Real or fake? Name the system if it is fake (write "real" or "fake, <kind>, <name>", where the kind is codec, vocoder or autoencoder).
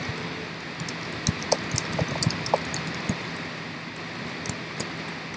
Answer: real